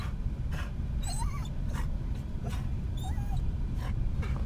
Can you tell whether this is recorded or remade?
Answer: recorded